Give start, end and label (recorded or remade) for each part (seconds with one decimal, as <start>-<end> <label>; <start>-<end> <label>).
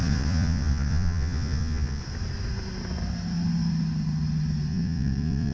0.0-2.0 remade; 2.0-4.7 recorded; 4.7-5.5 remade